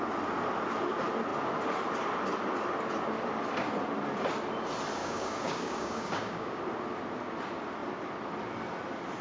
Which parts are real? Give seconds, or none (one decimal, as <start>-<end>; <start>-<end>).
0.0-5.0; 6.6-9.2